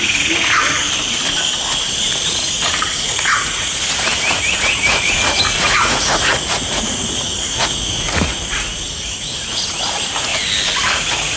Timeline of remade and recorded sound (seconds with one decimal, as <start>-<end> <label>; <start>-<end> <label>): 0.0-0.8 remade; 0.8-2.3 recorded; 2.3-10.3 remade; 10.3-10.9 recorded; 10.9-11.4 remade